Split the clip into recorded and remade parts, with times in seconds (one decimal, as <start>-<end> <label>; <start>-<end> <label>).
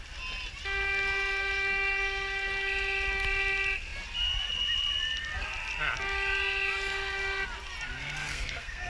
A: 0.0-8.0 recorded; 8.0-8.9 remade